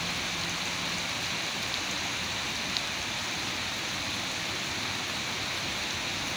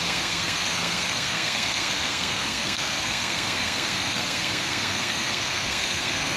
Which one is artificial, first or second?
second